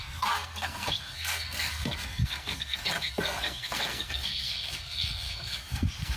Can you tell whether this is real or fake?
fake